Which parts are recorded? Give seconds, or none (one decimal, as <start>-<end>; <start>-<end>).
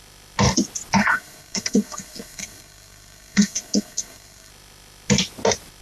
0.0-1.0; 4.5-5.8